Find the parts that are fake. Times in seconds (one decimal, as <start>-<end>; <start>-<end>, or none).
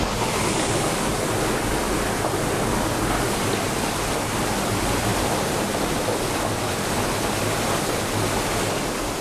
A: 1.1-1.8; 5.1-5.6